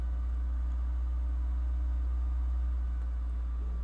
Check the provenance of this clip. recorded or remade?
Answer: recorded